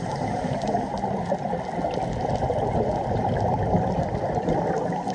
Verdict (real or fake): real